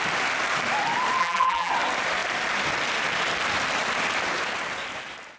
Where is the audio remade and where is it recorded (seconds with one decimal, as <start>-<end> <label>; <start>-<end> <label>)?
0.0-1.2 recorded; 1.2-1.7 remade; 1.7-5.4 recorded

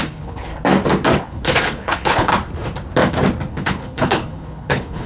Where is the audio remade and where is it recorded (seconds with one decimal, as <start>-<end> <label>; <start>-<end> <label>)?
0.0-0.5 remade; 0.5-1.2 recorded; 1.2-2.3 remade; 2.3-3.5 recorded; 3.5-5.1 remade

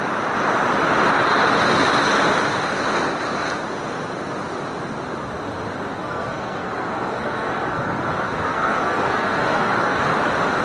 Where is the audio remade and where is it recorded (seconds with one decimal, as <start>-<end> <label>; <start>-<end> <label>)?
0.0-5.9 recorded; 5.9-10.0 remade; 10.0-10.6 recorded

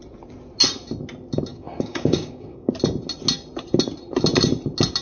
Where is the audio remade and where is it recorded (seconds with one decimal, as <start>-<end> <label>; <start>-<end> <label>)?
0.0-1.5 recorded; 1.5-2.7 remade; 2.7-5.0 recorded

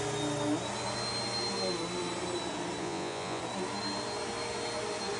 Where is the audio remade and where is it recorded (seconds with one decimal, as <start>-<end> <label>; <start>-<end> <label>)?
0.0-2.8 recorded; 2.8-3.4 remade; 3.4-5.2 recorded

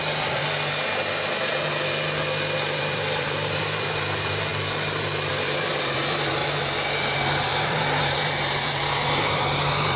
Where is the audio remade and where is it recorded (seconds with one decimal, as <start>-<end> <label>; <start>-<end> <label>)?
0.0-0.4 remade; 0.4-2.5 recorded; 2.5-4.5 remade; 4.5-5.3 recorded; 5.3-10.0 remade